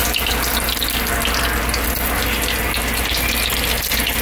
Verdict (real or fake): real